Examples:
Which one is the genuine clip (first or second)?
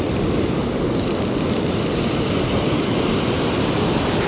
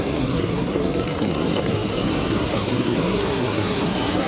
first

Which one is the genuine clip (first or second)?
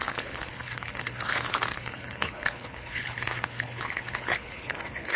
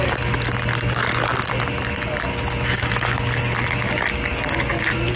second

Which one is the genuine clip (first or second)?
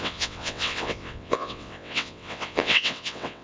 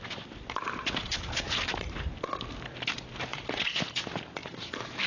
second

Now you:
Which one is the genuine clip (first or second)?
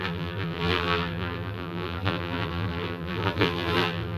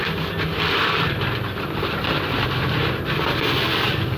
second